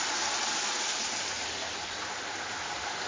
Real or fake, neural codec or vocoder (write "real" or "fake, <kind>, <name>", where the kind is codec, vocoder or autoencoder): real